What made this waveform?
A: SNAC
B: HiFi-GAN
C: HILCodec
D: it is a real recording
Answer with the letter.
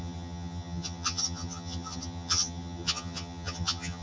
B